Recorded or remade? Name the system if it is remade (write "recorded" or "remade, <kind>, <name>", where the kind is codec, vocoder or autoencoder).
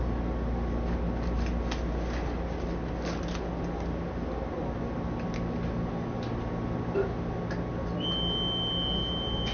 recorded